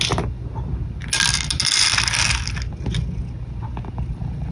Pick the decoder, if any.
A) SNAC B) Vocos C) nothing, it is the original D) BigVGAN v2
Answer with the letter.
C